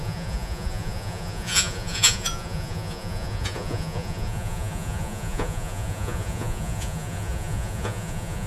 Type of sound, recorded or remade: remade